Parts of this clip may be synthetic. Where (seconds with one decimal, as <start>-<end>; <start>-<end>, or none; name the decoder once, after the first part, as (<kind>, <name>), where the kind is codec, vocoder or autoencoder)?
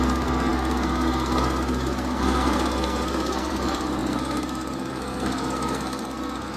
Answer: 0.0-6.6 (codec, SNAC)